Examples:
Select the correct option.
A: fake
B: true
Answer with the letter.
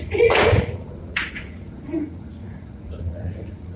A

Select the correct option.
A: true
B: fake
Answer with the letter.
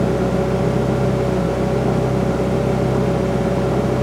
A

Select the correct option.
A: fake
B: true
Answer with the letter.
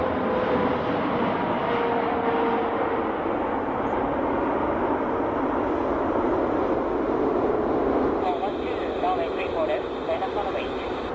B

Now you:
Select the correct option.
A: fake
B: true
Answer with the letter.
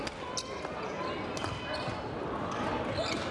B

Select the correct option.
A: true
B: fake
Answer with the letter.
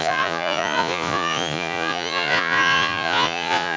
B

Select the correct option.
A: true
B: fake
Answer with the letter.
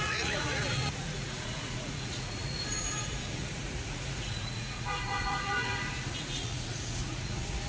B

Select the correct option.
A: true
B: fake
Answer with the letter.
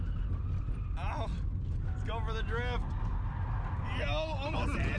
A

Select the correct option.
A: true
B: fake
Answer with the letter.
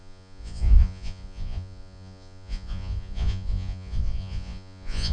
B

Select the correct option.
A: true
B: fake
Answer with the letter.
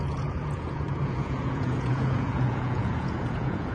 B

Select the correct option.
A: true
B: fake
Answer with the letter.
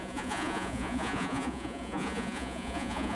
B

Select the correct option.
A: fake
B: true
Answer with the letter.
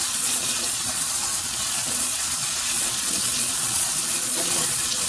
A